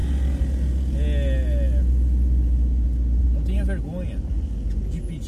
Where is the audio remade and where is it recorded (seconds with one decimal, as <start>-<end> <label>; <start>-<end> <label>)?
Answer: 0.0-5.3 recorded